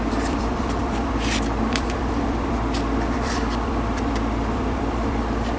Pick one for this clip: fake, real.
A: fake